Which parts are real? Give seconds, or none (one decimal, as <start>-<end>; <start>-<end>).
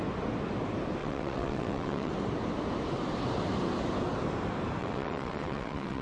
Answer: 0.0-1.0; 2.1-4.8